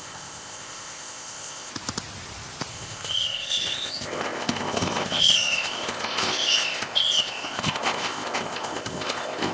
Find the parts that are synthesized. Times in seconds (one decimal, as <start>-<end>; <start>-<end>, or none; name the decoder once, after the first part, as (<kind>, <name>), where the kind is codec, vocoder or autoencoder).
0.0-1.7 (codec, ZipCodec); 2.7-9.5